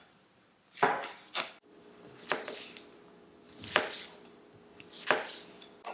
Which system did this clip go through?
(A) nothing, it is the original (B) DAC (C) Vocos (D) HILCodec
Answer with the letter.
A